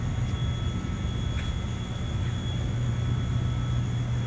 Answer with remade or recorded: recorded